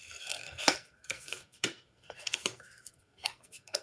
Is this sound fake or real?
fake